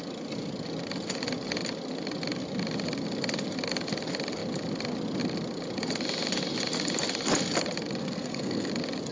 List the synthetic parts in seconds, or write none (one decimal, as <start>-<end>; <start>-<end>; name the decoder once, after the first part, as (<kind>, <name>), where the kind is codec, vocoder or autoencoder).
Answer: 8.0-8.7 (codec, SNAC)